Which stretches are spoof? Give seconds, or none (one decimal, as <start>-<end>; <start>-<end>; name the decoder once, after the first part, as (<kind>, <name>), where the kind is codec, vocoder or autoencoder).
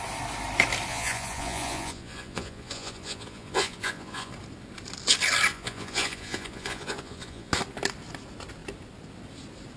0.9-4.3 (vocoder, Vocos); 5.5-7.5